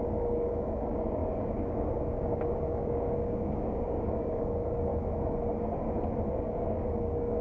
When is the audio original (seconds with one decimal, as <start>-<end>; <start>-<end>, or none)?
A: 4.9-6.3